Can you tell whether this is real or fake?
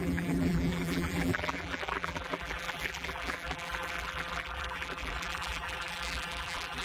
fake